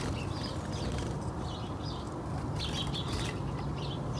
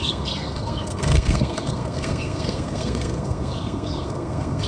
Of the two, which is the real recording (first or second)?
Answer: first